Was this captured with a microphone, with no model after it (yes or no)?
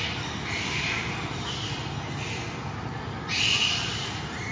yes